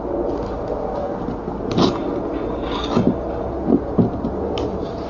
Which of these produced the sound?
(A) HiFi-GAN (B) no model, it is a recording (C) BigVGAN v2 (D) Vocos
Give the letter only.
B